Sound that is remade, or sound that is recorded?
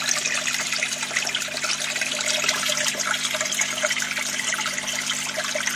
recorded